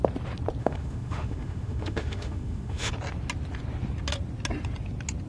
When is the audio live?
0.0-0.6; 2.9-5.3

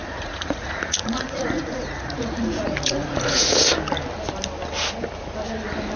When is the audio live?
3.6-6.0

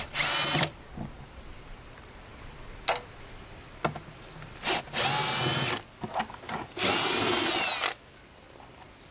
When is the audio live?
0.0-9.1

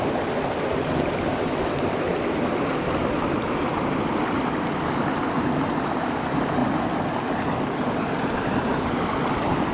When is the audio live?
2.1-3.0; 6.6-8.2